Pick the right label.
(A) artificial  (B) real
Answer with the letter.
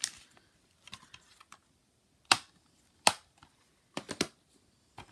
B